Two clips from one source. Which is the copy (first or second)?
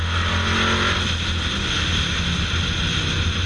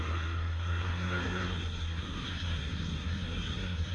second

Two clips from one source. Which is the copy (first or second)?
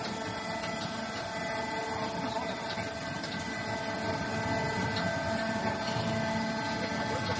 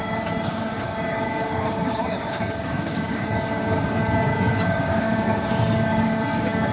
second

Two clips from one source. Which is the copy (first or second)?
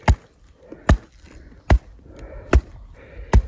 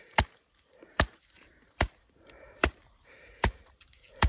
second